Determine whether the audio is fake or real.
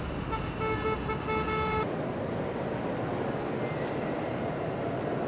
real